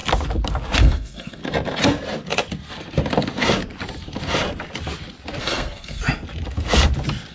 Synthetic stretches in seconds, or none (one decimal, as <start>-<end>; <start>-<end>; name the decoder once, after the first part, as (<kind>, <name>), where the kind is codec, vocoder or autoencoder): 0.8-1.4 (codec, SNAC); 5.4-6.0